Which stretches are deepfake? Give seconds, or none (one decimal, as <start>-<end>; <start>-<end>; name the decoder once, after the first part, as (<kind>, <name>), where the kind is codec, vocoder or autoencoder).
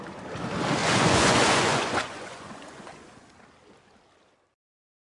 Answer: 0.8-3.3 (vocoder, Vocos)